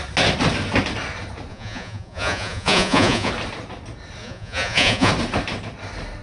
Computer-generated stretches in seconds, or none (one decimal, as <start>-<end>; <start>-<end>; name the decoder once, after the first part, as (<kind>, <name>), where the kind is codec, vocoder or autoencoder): 1.5-3.3 (vocoder, Vocos); 4.2-5.1